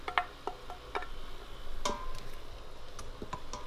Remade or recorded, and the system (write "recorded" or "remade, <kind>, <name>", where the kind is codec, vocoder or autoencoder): recorded